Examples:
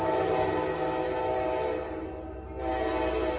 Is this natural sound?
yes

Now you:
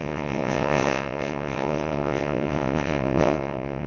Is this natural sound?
no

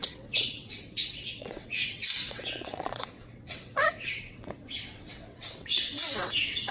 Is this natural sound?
no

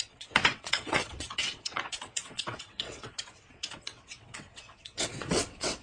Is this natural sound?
no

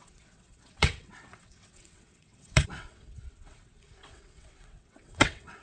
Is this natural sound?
no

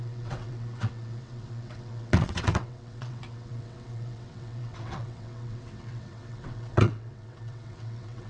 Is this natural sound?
no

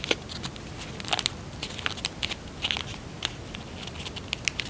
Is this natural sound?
yes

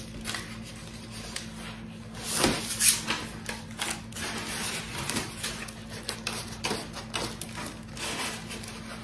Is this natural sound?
yes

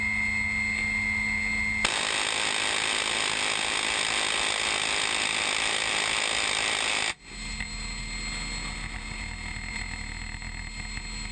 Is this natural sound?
yes